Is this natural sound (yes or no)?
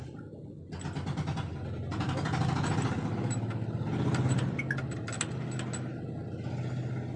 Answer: yes